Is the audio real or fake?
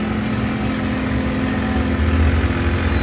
real